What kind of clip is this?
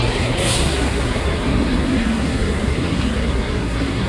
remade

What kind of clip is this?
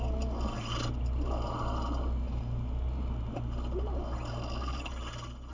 recorded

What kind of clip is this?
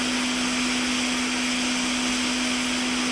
recorded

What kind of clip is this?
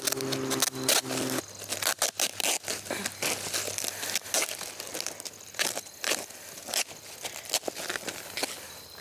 recorded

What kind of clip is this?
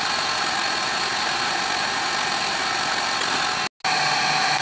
recorded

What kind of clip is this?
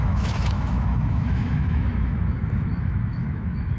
remade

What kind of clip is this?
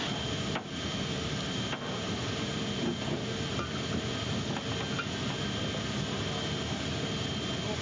recorded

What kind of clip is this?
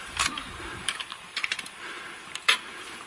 remade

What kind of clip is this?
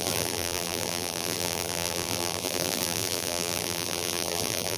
remade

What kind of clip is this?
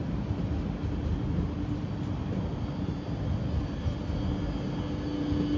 recorded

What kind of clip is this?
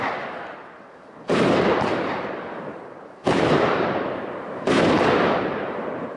remade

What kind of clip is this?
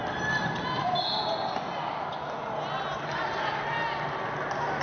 recorded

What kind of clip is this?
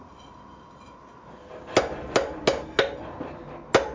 recorded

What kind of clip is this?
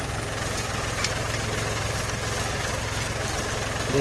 recorded